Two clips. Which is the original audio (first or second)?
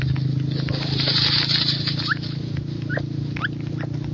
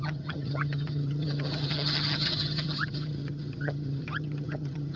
first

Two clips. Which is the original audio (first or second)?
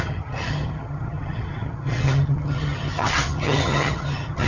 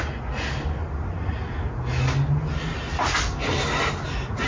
second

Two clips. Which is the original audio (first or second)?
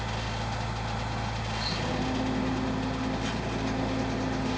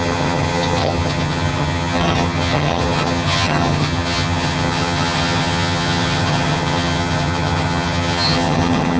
first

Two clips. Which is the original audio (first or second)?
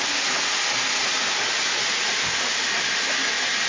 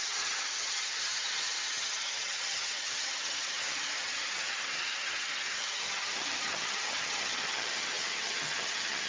first